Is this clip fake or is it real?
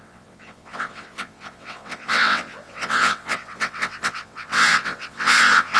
fake